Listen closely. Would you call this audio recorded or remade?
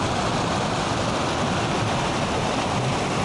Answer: recorded